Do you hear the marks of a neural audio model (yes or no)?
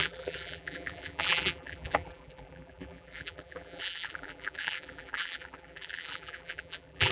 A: yes